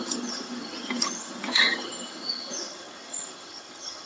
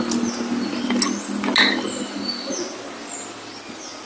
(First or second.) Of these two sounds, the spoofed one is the first